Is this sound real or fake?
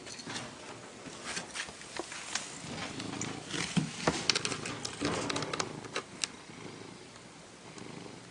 real